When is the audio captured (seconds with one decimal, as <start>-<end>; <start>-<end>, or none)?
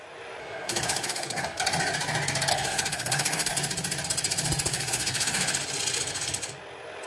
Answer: 0.0-0.4; 1.6-2.5; 3.5-4.7; 5.5-7.1